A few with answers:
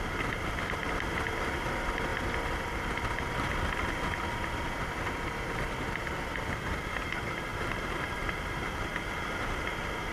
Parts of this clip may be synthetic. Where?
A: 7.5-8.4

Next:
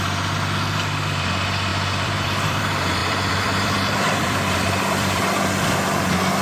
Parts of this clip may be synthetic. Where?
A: 1.7-2.6; 3.0-5.9

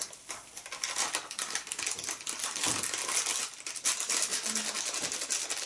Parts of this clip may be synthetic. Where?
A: none

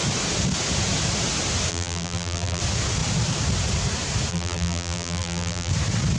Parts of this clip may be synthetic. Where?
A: 1.7-2.6; 4.3-5.7

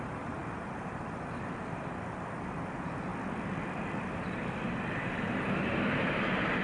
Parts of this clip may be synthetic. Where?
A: 0.0-3.1; 4.1-6.6

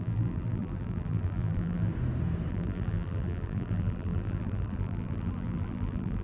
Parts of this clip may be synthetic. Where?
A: 0.0-1.9; 2.5-6.2

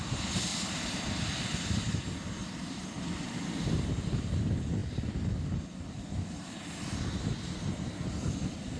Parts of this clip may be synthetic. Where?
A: 0.5-1.9; 2.4-3.9; 4.8-6.6

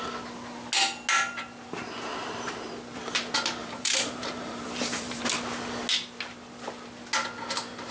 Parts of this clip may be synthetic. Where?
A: 2.1-2.7; 3.6-5.2